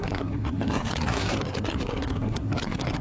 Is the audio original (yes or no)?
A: no